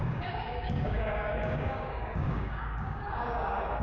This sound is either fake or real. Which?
fake